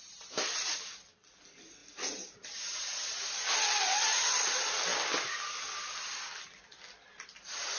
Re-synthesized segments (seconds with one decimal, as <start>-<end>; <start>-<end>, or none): none